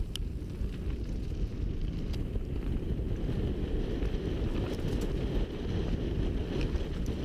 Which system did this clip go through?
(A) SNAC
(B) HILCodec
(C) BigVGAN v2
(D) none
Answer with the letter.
C